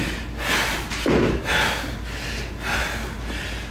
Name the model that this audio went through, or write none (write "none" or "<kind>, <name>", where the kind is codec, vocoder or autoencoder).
none